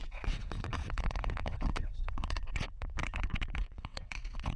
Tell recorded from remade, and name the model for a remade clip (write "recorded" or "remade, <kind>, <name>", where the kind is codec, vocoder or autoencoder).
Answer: remade, vocoder, WaveNeXt